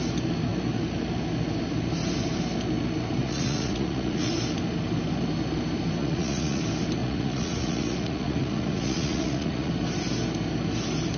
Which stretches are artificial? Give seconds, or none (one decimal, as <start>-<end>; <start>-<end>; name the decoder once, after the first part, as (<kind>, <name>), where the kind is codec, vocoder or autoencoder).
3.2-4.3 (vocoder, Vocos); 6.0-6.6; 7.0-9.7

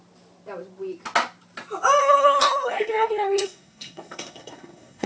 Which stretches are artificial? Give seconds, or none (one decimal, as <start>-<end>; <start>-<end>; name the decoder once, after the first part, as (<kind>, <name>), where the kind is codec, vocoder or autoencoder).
2.0-5.1 (codec, SNAC)

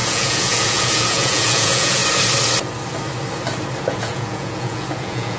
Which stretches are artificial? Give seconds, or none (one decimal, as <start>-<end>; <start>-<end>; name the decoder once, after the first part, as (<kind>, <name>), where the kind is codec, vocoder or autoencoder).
0.0-2.0 (vocoder, Vocos); 3.9-5.4

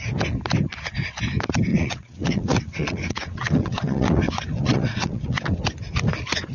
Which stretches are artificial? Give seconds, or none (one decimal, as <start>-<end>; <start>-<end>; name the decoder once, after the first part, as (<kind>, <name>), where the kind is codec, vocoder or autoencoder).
1.7-5.6 (vocoder, WaveNeXt)